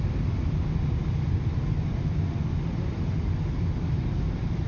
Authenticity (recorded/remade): recorded